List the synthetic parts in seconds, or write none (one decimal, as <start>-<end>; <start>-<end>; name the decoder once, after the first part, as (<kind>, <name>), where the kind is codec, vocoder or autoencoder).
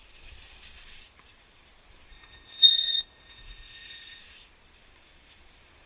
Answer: 2.1-4.2 (codec, ZipCodec)